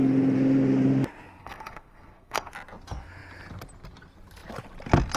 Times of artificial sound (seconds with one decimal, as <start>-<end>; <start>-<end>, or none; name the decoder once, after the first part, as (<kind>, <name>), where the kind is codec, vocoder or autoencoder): 1.4-2.5 (codec, SNAC)